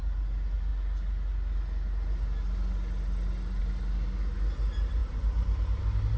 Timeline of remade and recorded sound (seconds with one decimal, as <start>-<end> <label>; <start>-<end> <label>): 0.0-5.0 recorded; 5.0-5.8 remade; 5.8-6.2 recorded